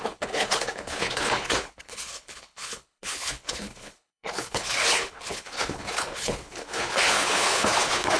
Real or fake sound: fake